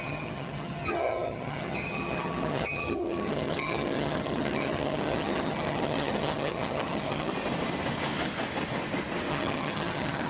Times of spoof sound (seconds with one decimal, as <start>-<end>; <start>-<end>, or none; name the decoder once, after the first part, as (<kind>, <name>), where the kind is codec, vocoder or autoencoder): 0.0-7.3 (vocoder, HiFi-GAN); 9.3-10.3